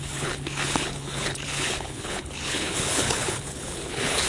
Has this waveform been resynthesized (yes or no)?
yes